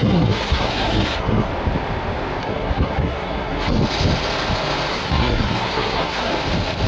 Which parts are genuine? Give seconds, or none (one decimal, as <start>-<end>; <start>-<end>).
1.5-2.4; 3.8-4.9; 6.3-6.9